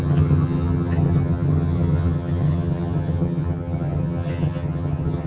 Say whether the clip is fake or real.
fake